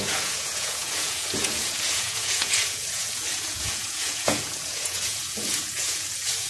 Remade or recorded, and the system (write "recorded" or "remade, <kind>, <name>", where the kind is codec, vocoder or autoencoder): remade, vocoder, Vocos